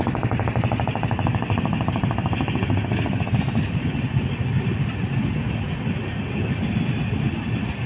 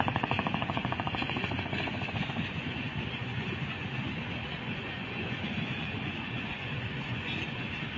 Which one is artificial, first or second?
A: second